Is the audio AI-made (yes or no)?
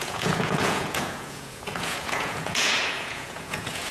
yes